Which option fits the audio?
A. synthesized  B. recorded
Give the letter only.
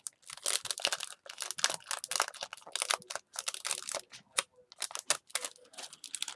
B